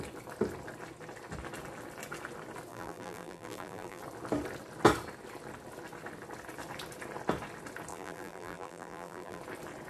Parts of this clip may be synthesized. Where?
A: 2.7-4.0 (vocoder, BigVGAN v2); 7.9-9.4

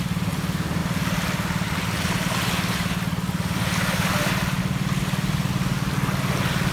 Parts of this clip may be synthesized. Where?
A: none

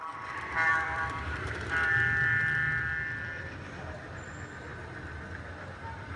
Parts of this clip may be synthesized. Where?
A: 0.7-1.6 (vocoder, BigVGAN v2)

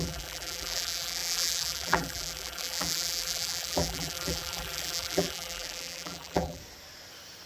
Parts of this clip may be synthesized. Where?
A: 0.0-6.6 (vocoder, BigVGAN v2)

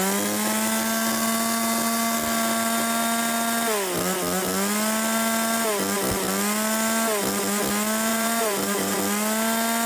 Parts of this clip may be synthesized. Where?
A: 8.1-9.0 (vocoder, BigVGAN v2)